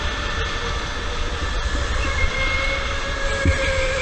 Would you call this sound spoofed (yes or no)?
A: no